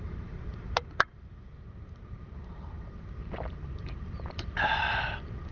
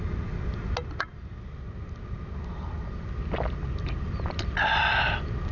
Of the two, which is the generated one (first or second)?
first